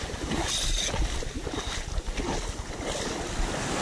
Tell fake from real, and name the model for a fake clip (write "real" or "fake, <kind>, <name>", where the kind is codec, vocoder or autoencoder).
real